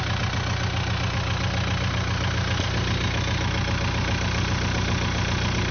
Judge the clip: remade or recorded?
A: recorded